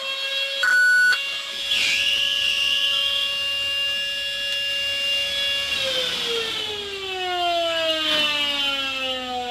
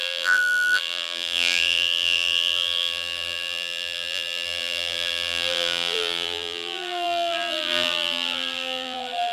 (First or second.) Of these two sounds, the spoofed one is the second